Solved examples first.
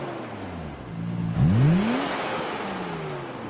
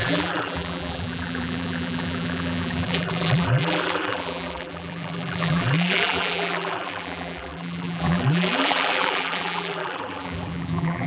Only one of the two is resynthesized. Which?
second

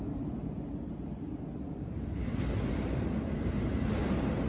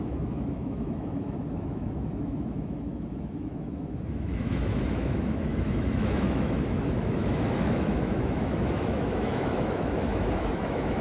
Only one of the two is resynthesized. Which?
second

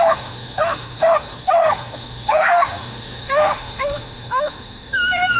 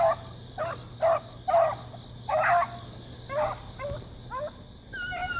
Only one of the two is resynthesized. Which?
first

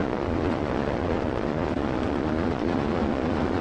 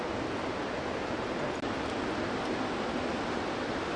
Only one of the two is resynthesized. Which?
first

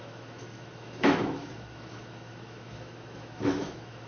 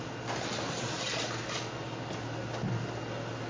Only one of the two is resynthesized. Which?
first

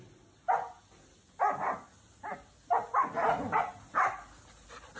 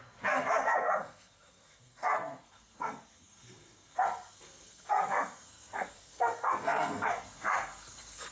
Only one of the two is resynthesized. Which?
second